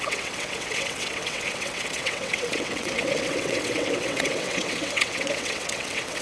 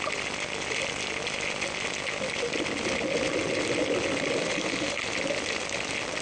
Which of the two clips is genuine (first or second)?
second